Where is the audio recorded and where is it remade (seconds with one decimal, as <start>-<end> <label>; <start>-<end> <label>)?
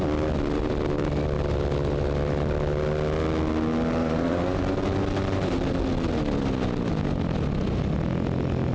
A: 0.0-4.0 recorded; 4.0-4.6 remade; 4.6-8.7 recorded